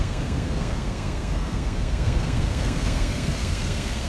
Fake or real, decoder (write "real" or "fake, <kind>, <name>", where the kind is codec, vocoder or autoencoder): fake, codec, SNAC